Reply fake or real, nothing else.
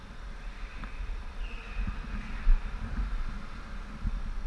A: real